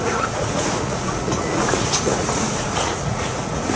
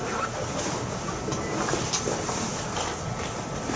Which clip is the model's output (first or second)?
first